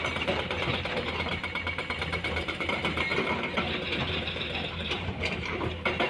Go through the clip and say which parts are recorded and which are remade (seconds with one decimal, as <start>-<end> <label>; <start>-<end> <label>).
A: 0.0-1.4 remade; 1.4-2.1 recorded; 2.1-3.1 remade; 3.1-4.1 recorded; 4.1-6.1 remade